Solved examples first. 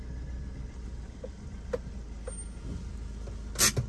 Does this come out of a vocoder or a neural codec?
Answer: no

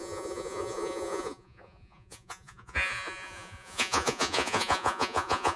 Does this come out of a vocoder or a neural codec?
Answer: yes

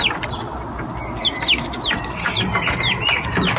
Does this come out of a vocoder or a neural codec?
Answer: no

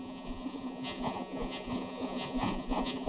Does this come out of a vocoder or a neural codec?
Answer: yes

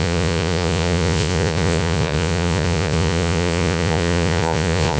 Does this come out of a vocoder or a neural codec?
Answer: yes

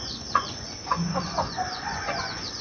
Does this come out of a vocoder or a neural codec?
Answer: yes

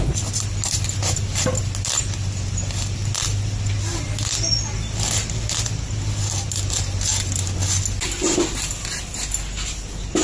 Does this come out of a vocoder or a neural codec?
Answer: no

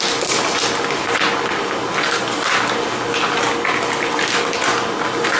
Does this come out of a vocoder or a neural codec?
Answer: no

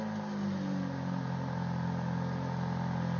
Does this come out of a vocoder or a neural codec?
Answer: no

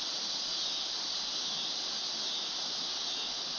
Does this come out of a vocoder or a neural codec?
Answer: no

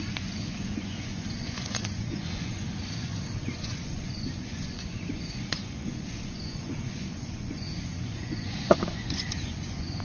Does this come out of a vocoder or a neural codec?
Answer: yes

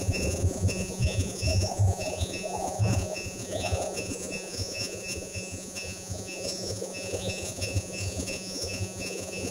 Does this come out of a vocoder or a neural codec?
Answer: yes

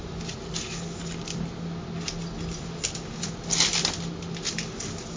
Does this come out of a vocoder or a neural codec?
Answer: no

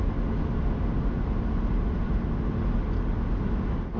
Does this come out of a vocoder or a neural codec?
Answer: no